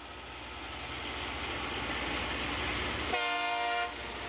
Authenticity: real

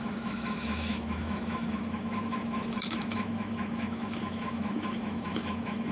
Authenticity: fake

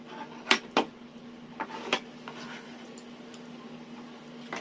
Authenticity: real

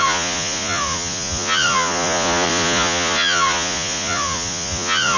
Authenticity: fake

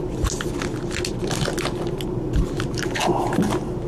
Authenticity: real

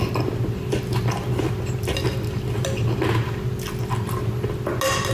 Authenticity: real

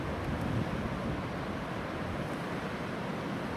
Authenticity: real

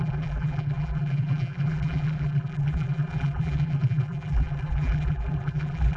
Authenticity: fake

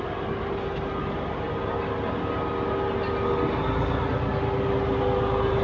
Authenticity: real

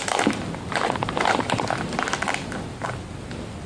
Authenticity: real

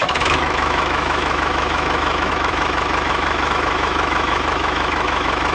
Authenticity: fake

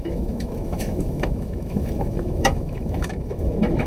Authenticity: fake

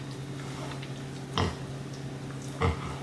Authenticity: real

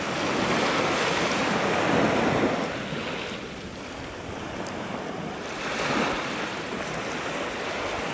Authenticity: real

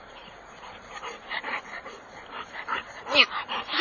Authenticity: fake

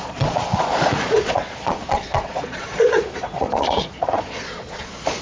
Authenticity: fake